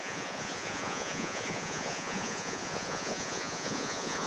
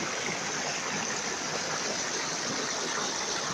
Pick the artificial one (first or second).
first